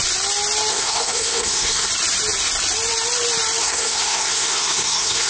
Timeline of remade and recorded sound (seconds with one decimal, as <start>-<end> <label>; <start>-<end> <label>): 0.0-0.7 recorded; 0.7-1.9 remade; 1.9-3.6 recorded; 3.6-5.3 remade